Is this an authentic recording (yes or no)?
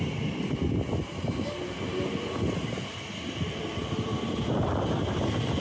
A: yes